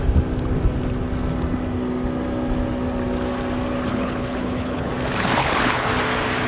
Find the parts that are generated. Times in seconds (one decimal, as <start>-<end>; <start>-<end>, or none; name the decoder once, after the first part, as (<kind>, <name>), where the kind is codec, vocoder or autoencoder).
3.9-4.9 (codec, HILCodec); 5.4-5.9